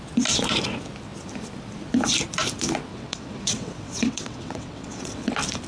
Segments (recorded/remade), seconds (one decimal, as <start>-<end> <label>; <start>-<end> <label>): 0.0-2.9 recorded; 2.9-5.3 remade; 5.3-5.7 recorded